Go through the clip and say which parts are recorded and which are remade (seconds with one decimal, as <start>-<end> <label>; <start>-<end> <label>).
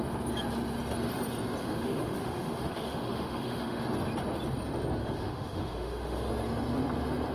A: 0.0-1.6 recorded; 1.6-3.8 remade; 3.8-5.0 recorded; 5.0-6.3 remade; 6.3-7.3 recorded